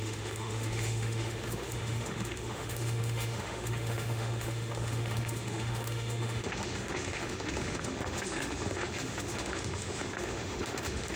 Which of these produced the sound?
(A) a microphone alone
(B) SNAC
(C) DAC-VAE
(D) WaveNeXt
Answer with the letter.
C